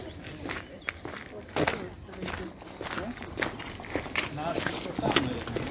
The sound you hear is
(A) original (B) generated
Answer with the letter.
A